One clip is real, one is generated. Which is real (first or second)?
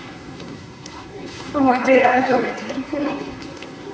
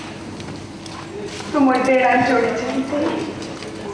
second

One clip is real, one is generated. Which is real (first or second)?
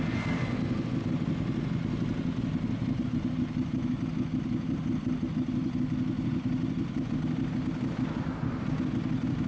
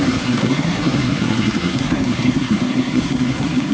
first